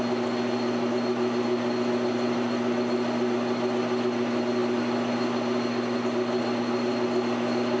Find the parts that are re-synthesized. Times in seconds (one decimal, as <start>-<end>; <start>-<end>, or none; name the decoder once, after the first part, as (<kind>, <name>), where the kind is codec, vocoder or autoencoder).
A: none